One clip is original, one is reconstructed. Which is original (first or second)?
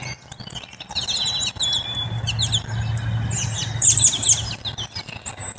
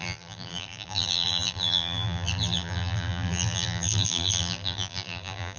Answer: first